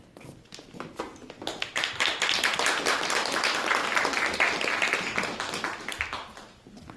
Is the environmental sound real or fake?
real